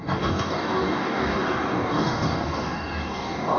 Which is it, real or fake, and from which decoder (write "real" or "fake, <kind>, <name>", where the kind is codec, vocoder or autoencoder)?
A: fake, codec, DAC